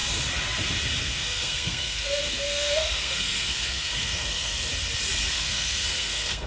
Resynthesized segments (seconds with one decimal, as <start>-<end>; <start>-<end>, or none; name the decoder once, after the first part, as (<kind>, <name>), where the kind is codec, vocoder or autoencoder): 1.0-4.7 (codec, SNAC); 5.3-6.5